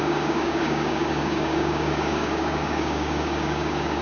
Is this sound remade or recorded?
remade